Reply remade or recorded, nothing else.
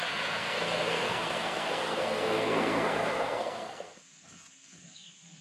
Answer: remade